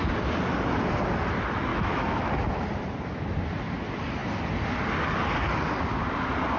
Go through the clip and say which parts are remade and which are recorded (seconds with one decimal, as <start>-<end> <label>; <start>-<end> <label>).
0.0-1.7 recorded; 1.7-2.3 remade; 2.3-6.6 recorded